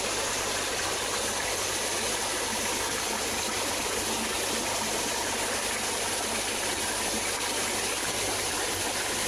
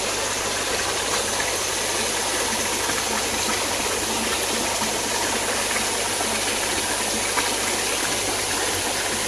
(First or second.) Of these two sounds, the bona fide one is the second